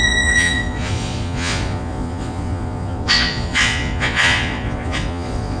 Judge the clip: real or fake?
fake